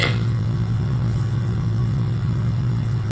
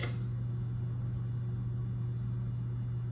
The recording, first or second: second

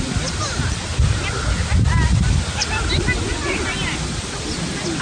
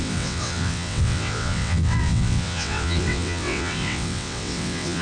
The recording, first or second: first